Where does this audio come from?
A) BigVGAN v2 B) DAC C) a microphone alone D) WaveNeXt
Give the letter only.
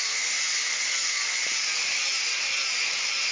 A